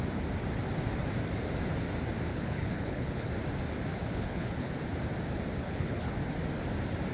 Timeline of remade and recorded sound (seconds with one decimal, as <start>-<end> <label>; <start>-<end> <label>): 0.0-2.3 recorded; 2.3-3.3 remade; 3.3-3.9 recorded; 3.9-4.7 remade; 4.7-5.6 recorded; 5.6-6.1 remade; 6.1-7.1 recorded